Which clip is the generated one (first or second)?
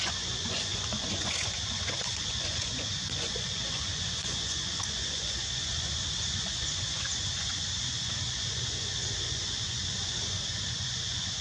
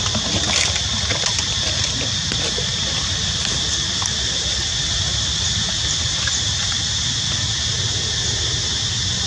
first